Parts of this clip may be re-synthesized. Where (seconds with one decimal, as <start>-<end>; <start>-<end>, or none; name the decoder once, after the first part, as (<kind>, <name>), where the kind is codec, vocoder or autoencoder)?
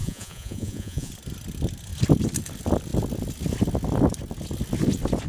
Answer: 0.0-1.1 (vocoder, Vocos)